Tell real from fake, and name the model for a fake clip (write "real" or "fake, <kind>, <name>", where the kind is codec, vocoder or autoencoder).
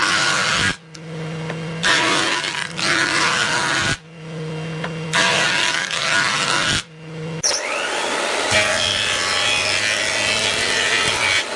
real